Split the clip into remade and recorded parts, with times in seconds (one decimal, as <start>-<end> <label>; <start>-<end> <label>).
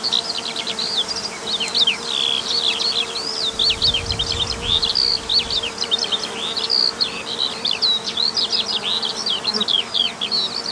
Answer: 0.0-5.1 recorded; 5.1-5.7 remade; 5.7-10.7 recorded